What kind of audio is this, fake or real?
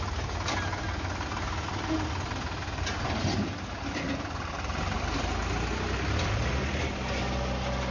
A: real